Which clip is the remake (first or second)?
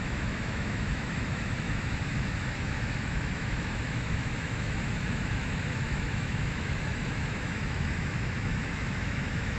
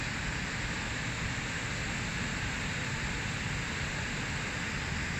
first